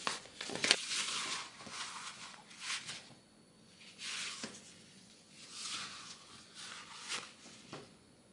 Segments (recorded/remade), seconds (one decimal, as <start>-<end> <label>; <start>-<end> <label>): 0.0-2.4 remade; 2.4-3.2 recorded; 3.2-8.3 remade